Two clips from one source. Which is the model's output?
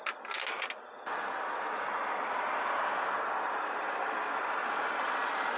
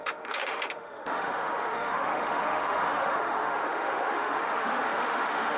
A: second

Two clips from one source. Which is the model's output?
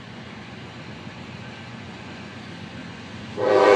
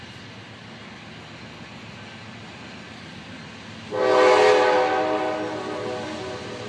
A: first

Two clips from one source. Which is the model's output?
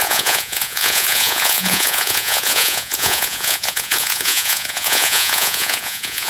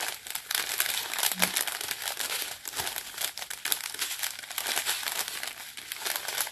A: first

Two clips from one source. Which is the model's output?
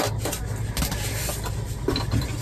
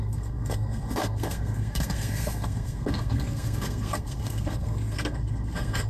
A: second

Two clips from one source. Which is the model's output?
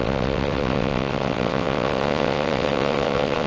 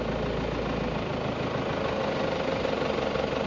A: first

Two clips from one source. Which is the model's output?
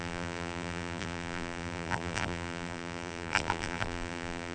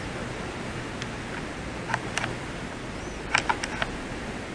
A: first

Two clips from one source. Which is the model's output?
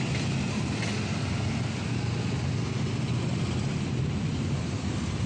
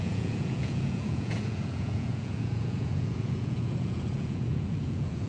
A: second